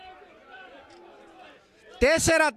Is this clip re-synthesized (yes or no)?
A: no